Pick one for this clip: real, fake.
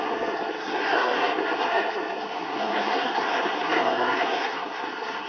fake